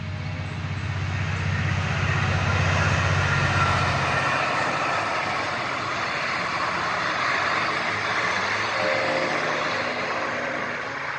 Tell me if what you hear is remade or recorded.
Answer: recorded